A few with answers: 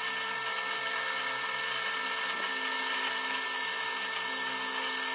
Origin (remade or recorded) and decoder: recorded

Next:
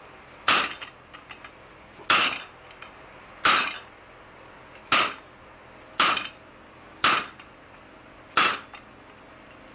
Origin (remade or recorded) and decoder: recorded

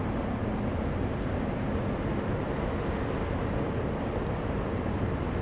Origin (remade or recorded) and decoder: recorded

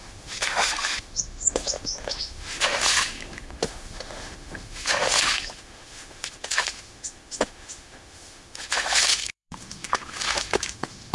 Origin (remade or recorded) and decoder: remade, autoencoder, DAC-VAE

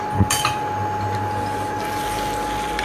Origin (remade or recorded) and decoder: recorded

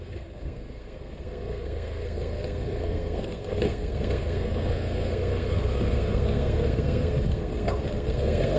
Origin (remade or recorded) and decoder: remade, codec, SNAC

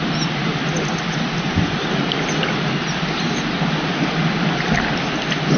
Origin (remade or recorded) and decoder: recorded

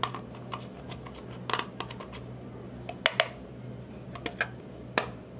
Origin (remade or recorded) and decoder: recorded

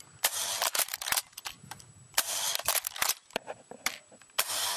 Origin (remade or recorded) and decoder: recorded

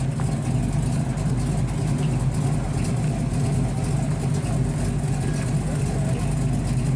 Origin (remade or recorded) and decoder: recorded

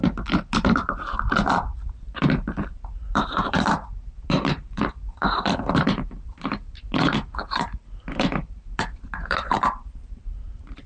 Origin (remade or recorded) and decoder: remade, vocoder, BigVGAN v2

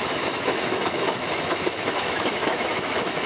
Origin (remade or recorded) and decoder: remade, autoencoder, DAC-VAE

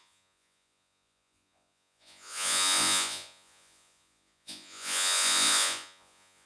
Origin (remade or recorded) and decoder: remade, vocoder, Vocos